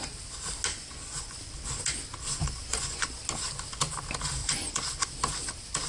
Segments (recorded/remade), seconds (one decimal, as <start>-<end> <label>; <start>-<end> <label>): 0.0-0.7 recorded; 0.7-1.4 remade; 1.4-2.4 recorded; 2.4-3.2 remade; 3.2-4.4 recorded; 4.4-5.1 remade; 5.1-5.9 recorded